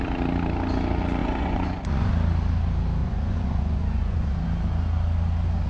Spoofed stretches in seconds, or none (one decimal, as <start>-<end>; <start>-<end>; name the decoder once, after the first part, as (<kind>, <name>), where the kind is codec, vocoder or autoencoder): 1.2-2.1 (vocoder, Vocos); 3.0-4.4